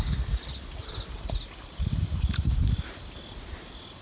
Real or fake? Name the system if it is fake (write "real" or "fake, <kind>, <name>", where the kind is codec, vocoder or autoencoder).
real